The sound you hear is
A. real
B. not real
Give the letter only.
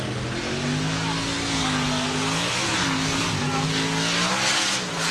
A